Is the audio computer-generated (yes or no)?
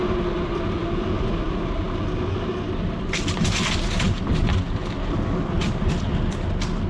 no